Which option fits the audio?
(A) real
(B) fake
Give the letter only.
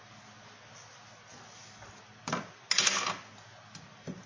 A